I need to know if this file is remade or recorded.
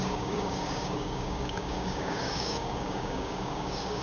remade